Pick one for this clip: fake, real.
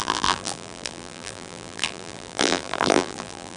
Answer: fake